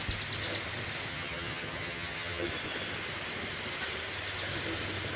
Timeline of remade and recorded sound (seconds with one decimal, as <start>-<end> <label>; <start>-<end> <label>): 0.0-1.1 recorded; 1.1-2.5 remade; 2.5-5.2 recorded